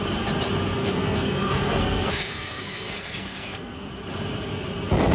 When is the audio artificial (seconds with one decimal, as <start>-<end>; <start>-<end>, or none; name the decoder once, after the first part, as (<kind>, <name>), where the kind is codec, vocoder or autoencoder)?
0.8-3.9 (codec, SNAC)